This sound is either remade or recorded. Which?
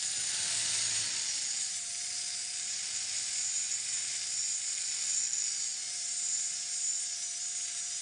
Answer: recorded